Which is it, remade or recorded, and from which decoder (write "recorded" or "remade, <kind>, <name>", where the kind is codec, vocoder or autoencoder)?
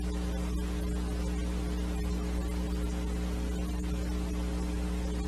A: recorded